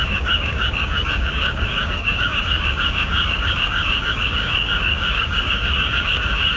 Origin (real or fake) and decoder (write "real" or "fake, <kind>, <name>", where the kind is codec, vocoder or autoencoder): fake, codec, DAC